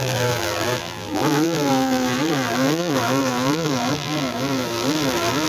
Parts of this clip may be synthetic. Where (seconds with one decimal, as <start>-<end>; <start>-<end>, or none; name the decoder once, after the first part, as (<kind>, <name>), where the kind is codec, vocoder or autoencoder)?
0.0-5.5 (vocoder, BigVGAN v2)